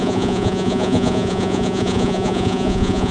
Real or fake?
fake